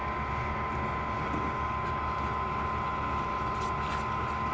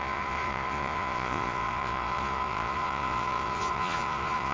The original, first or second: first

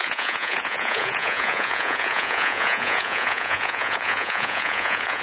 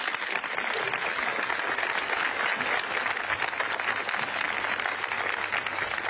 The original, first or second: second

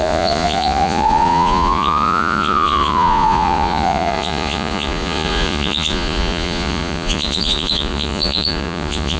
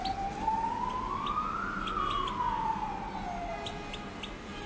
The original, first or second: second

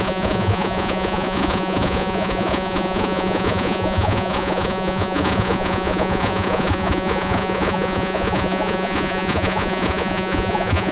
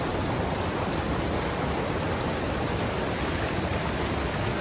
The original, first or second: second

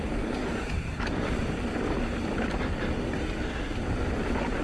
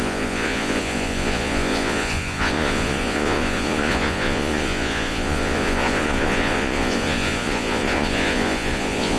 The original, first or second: first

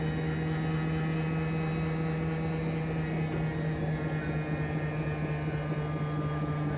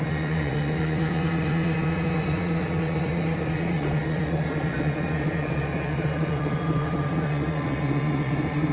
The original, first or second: first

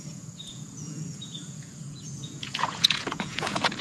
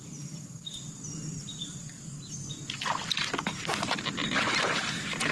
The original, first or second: second